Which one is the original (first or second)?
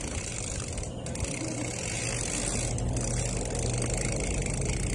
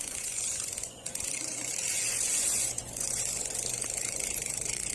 first